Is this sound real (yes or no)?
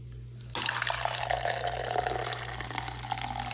yes